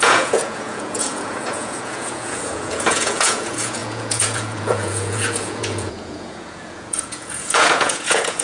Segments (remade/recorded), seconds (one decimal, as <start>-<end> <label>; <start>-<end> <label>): 0.0-8.4 remade